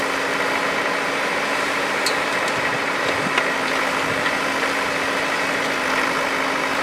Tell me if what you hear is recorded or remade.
recorded